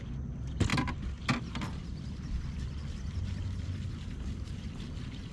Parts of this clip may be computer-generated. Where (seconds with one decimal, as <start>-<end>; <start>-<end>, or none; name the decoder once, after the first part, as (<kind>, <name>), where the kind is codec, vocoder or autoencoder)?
none